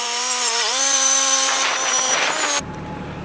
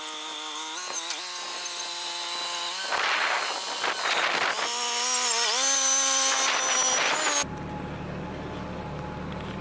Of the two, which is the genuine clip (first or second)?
second